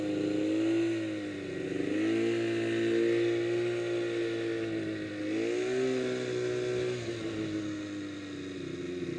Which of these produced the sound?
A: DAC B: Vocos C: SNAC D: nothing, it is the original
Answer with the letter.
D